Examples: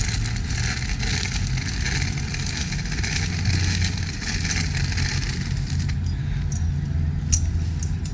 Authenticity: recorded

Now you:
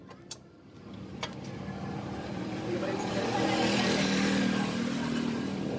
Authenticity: remade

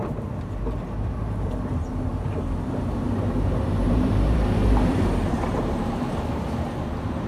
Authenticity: remade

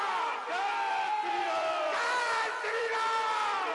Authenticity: remade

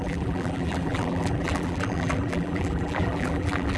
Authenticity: remade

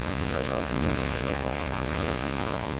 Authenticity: remade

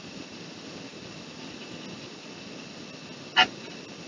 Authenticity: recorded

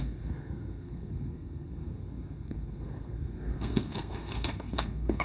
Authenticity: remade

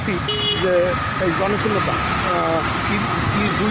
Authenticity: recorded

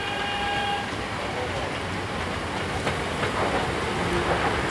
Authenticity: recorded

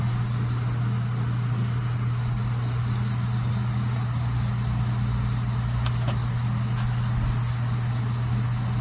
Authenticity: recorded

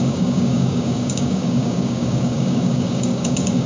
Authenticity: remade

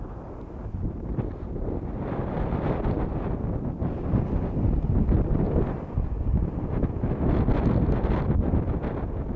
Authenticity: recorded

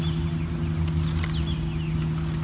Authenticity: recorded